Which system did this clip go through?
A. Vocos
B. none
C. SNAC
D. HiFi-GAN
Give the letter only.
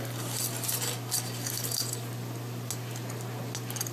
B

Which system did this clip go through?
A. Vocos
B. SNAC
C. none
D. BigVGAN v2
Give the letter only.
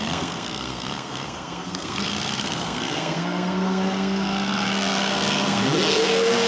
B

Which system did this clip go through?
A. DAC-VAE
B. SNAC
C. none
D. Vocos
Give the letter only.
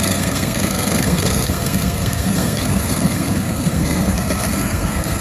B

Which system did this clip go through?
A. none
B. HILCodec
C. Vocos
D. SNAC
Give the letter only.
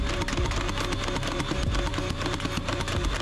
A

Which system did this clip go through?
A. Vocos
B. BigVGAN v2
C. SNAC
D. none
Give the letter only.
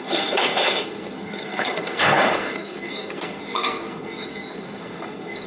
C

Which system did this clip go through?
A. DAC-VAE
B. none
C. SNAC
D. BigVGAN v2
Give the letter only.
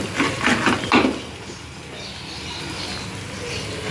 B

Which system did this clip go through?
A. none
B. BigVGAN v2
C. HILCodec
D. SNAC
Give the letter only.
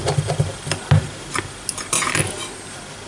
A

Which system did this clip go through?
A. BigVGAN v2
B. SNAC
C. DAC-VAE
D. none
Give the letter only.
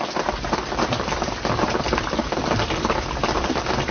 D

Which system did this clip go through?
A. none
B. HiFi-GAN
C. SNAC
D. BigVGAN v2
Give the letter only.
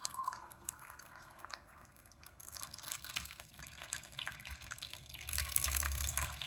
C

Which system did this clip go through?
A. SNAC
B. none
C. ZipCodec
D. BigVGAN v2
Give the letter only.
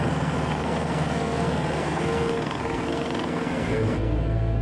A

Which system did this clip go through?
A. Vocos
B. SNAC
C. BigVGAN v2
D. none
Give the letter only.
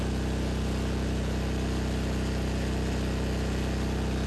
D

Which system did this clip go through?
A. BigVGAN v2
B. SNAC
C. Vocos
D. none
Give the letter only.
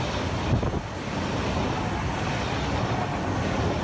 D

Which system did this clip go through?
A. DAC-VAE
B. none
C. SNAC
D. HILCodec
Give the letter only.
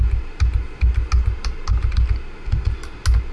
B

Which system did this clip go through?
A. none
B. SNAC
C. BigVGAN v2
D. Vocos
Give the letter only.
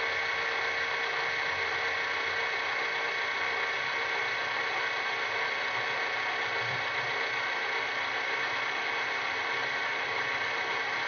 A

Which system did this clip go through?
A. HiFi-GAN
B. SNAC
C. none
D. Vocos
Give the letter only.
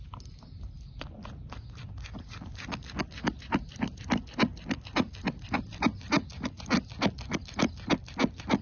C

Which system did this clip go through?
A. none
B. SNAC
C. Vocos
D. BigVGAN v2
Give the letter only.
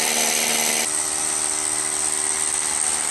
A